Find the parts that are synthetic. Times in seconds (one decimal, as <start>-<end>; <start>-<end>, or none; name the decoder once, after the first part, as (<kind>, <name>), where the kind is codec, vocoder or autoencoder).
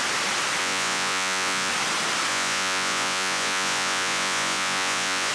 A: 0.6-1.7 (vocoder, Vocos); 2.3-5.3